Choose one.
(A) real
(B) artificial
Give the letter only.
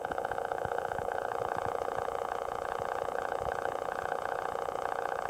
B